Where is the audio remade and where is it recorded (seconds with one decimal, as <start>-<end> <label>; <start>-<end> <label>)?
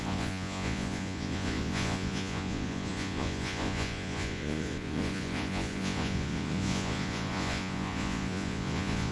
0.0-9.1 remade